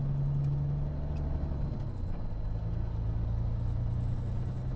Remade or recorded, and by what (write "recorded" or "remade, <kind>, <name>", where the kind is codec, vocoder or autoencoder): recorded